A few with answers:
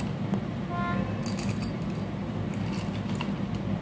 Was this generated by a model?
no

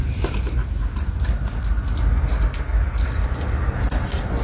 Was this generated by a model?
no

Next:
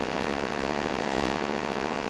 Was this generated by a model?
yes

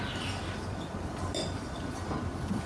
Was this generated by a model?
no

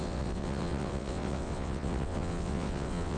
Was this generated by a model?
yes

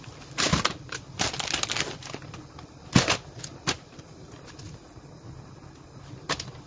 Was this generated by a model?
no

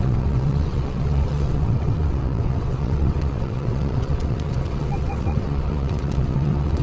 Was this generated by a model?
yes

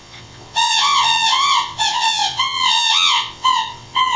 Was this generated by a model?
yes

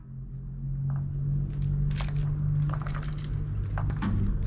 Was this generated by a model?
no